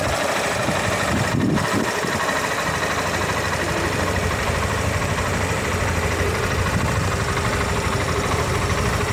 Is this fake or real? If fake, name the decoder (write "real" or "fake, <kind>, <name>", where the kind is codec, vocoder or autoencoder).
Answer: fake, vocoder, BigVGAN v2